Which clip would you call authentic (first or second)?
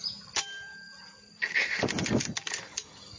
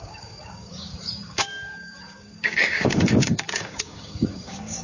first